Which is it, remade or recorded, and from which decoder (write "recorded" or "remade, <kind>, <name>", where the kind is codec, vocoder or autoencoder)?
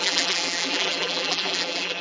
remade, vocoder, BigVGAN v2